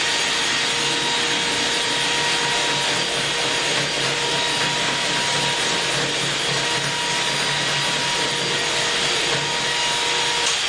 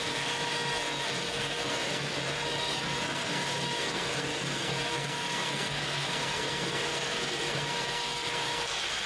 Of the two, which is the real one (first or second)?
first